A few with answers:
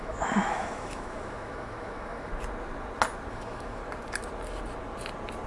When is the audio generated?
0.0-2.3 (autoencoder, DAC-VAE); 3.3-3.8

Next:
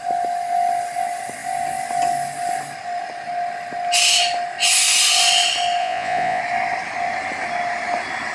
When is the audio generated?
5.8-6.4 (vocoder, Vocos)

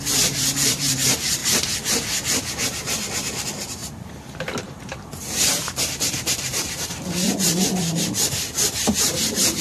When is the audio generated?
0.0-1.4 (vocoder, BigVGAN v2); 2.2-9.6

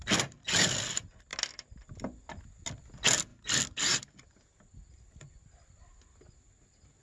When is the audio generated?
none